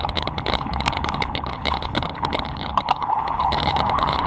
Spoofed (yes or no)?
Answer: yes